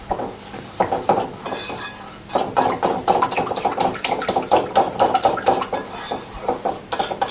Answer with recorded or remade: recorded